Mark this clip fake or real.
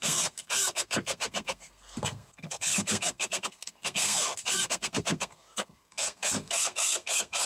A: fake